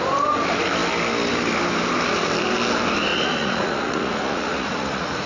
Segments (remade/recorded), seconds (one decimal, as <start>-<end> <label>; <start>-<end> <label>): 0.0-3.1 recorded; 3.1-5.3 remade